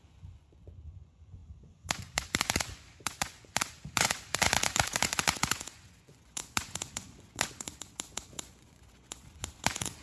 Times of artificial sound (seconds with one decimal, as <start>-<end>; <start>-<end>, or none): 0.0-10.0